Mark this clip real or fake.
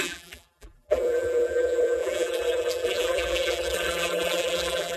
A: fake